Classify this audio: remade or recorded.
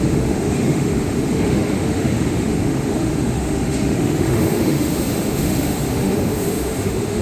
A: remade